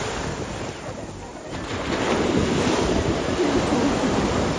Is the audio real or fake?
real